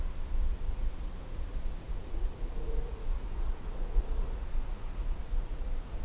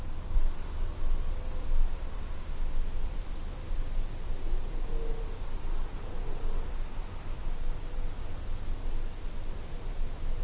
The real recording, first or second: second